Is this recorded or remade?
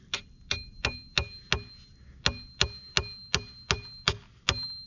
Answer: recorded